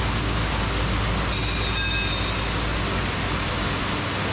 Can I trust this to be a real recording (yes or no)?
yes